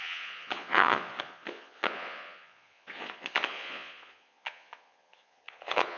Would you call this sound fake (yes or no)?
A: yes